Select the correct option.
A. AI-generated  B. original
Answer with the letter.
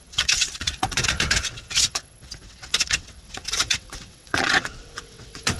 A